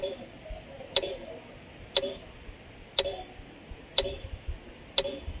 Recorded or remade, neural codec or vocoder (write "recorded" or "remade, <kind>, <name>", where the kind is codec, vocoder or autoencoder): recorded